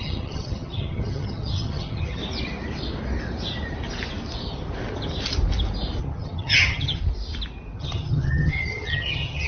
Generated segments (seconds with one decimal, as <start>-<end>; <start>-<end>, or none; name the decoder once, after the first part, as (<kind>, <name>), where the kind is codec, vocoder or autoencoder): 0.0-2.2 (vocoder, HiFi-GAN); 6.0-7.0; 7.8-9.5